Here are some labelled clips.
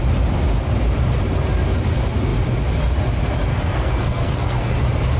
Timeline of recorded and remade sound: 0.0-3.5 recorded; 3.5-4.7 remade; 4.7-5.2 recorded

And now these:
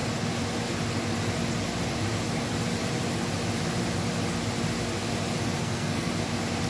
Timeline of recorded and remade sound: 0.0-5.6 recorded; 5.6-6.1 remade; 6.1-6.7 recorded

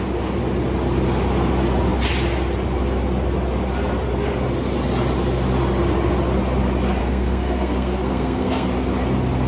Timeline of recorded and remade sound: 0.0-7.0 recorded; 7.0-8.7 remade; 8.7-9.5 recorded

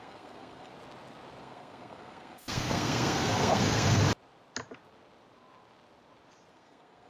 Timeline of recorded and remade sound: 0.0-0.7 remade; 0.7-1.4 recorded; 1.4-4.0 remade; 4.0-6.5 recorded; 6.5-7.1 remade

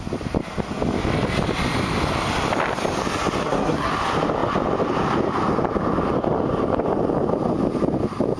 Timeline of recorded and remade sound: 0.0-3.4 recorded; 3.4-3.9 remade; 3.9-8.4 recorded

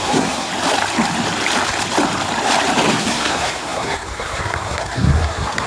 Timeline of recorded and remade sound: 0.0-0.5 remade; 0.5-2.9 recorded; 2.9-5.7 remade